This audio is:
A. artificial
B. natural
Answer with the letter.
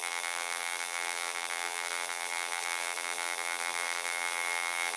A